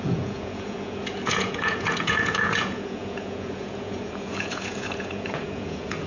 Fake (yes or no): yes